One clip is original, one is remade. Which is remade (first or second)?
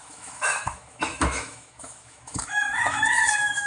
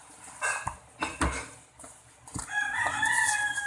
first